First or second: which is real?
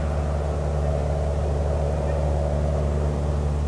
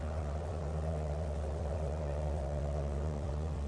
first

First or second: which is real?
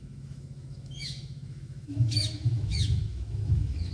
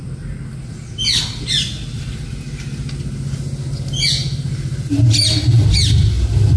second